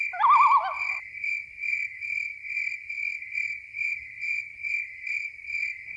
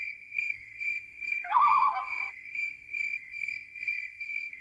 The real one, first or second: first